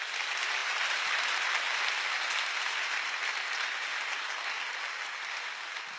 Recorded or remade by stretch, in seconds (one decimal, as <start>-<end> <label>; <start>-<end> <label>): 0.0-6.0 recorded